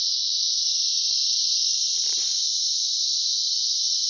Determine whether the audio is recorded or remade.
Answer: remade